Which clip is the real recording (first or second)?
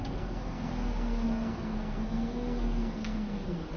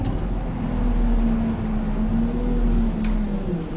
second